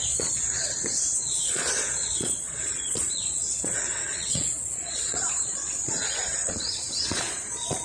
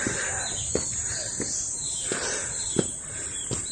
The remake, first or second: first